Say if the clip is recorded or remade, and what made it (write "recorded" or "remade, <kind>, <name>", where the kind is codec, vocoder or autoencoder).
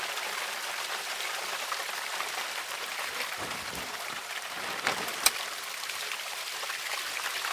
remade, vocoder, BigVGAN v2